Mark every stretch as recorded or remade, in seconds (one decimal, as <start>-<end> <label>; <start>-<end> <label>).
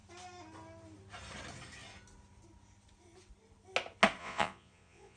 0.0-4.2 recorded; 4.2-5.2 remade